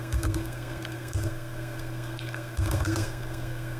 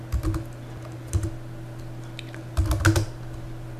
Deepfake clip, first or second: first